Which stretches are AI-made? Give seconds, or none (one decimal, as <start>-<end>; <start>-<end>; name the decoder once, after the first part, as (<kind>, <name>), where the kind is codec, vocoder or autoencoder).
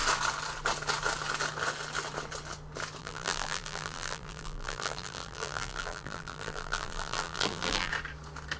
3.0-7.9 (vocoder, BigVGAN v2)